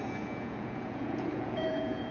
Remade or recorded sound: remade